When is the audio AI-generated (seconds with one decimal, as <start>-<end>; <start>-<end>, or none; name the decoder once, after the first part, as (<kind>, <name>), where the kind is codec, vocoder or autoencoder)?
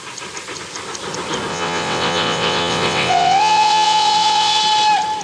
1.5-4.6 (vocoder, WaveNeXt)